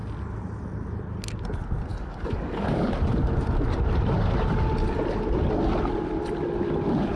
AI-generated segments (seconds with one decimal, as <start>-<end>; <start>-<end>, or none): 1.9-2.9

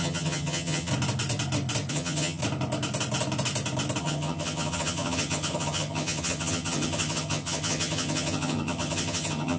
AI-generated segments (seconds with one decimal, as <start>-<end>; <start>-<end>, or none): 0.0-0.9; 1.9-2.4; 4.0-9.6

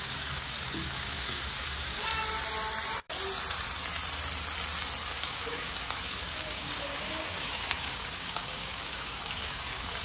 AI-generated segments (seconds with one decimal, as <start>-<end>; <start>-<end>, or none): 0.0-2.1; 5.1-10.0

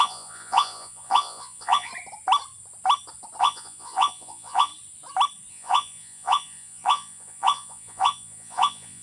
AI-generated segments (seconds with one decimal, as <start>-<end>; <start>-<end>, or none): 0.0-1.9; 3.4-4.7; 5.5-9.0

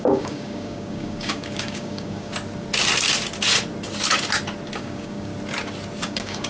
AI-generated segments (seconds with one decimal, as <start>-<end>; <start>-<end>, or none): 0.0-2.3; 4.8-5.3; 6.0-6.5